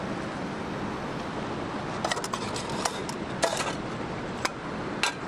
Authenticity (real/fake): real